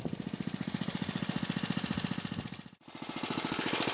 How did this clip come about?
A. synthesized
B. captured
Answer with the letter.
B